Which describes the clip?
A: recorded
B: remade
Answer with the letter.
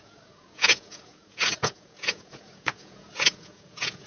B